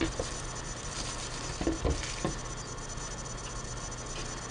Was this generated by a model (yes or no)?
no